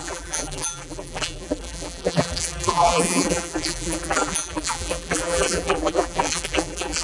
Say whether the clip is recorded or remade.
remade